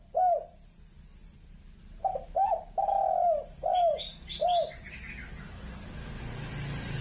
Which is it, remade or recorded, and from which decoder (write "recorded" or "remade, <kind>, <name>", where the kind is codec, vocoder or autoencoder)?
recorded